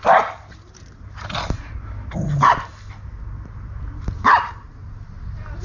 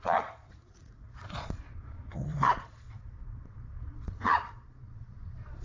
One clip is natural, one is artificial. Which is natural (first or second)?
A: first